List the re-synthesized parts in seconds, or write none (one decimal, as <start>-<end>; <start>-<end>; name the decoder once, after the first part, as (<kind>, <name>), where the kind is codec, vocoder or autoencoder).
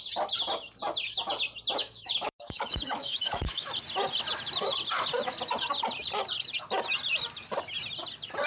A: 1.8-3.7 (autoencoder, DAC-VAE)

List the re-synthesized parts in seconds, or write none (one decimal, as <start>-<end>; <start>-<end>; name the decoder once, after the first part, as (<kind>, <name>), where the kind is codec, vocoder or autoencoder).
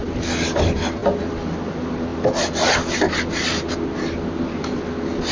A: none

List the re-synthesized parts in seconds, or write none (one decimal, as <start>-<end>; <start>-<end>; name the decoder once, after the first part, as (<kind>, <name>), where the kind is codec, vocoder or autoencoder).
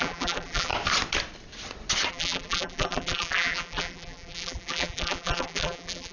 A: 0.0-0.7 (vocoder, BigVGAN v2); 2.1-6.1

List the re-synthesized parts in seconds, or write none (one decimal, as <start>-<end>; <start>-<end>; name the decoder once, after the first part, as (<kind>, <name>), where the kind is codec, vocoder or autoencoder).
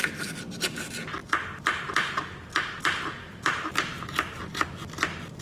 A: none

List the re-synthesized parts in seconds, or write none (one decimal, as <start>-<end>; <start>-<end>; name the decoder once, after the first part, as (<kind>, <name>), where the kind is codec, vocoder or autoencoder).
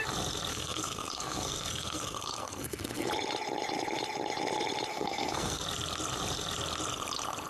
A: 0.5-3.1 (codec, SNAC); 4.9-5.6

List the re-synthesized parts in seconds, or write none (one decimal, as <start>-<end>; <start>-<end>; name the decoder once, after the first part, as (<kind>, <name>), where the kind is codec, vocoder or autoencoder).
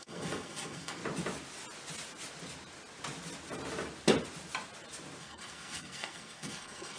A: 0.0-1.0 (codec, SNAC); 5.2-7.0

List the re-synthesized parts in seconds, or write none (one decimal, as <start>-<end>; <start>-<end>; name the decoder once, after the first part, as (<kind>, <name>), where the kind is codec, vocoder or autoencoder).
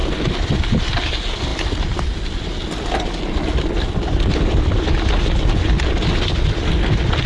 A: none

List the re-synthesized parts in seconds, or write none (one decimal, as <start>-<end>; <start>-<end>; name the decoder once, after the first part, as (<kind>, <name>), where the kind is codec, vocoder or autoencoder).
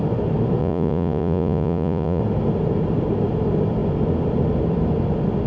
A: 0.6-2.2 (vocoder, Vocos)